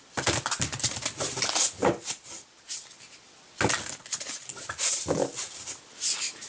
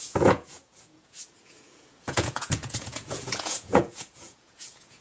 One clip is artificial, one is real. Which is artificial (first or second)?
second